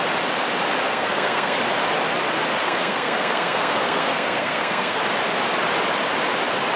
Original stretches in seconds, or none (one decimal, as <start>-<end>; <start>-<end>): 0.0-0.9; 1.6-2.6; 5.0-6.8